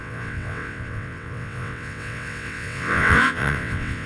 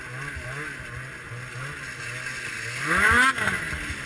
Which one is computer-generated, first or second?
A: first